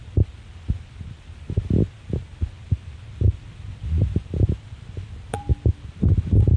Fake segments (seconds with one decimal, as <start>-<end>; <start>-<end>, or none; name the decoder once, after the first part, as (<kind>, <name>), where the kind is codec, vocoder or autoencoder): none